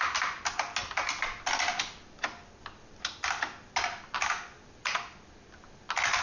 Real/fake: real